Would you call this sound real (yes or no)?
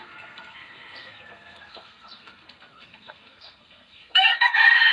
no